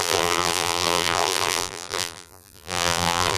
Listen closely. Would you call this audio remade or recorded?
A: remade